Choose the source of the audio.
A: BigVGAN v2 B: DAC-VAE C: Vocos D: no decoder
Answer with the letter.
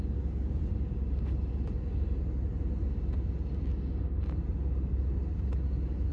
D